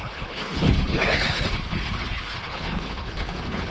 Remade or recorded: remade